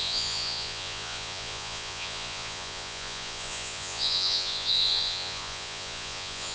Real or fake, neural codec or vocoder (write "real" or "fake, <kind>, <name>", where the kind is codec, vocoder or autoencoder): fake, vocoder, Vocos